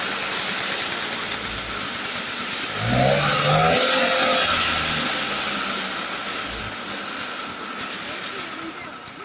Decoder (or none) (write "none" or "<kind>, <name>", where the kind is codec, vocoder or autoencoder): none